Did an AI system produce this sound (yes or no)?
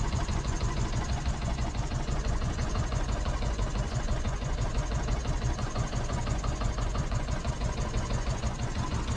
yes